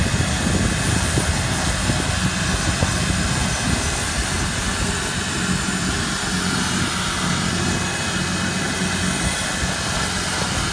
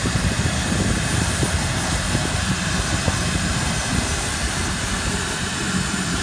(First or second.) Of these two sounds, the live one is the first